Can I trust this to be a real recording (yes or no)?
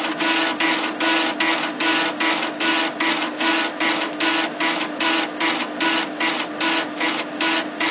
yes